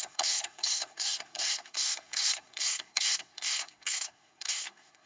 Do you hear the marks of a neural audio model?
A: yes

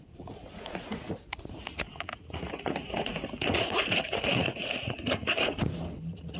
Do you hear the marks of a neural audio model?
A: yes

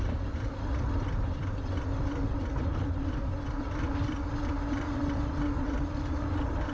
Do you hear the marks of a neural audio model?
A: no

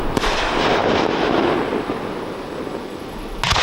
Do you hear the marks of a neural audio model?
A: no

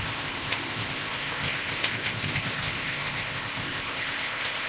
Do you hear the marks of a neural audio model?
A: yes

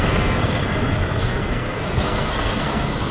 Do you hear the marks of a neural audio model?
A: yes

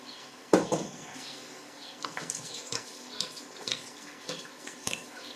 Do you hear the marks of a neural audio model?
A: yes